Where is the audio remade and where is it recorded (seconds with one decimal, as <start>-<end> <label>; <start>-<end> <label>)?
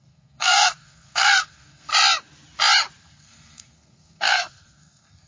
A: 0.0-1.9 remade; 1.9-3.0 recorded; 3.0-5.3 remade